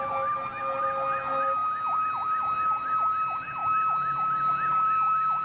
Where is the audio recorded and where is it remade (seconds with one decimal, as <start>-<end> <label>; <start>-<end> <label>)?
0.0-5.4 recorded